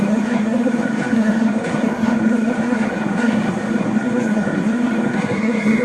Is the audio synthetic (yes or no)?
yes